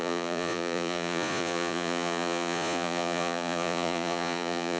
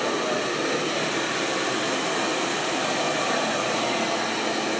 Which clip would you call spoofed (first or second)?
first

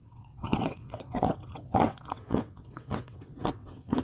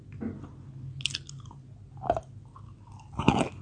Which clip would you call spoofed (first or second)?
first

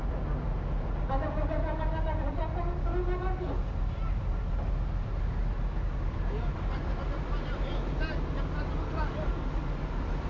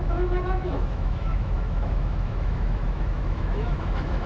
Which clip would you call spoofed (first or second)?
second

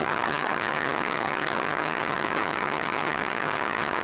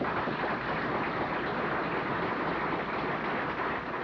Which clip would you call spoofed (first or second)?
first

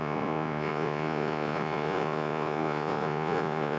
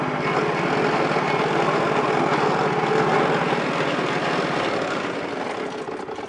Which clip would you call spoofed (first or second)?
first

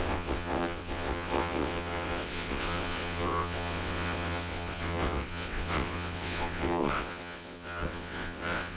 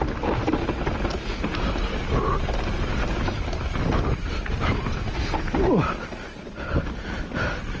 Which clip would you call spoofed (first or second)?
first